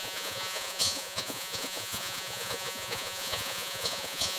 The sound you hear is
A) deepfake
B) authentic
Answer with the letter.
A